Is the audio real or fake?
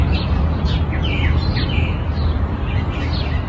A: real